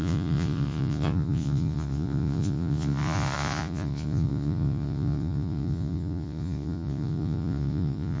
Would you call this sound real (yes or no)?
no